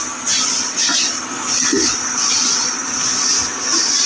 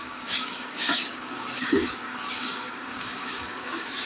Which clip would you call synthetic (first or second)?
second